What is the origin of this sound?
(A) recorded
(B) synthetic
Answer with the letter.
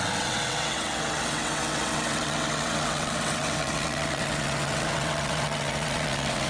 B